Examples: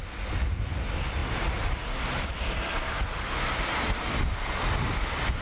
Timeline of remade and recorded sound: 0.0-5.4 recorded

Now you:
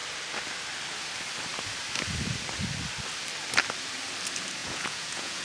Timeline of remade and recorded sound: 0.0-4.6 recorded; 4.6-5.4 remade